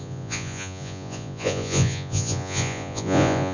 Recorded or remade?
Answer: remade